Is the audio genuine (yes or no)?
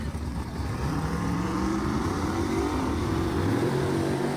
no